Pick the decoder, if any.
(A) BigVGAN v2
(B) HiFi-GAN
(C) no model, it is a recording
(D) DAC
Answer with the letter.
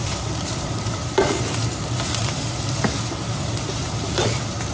A